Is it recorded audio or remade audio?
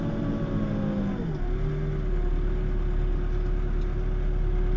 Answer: recorded